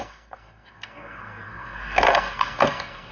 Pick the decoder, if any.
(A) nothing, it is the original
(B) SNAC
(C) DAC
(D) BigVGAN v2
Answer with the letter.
B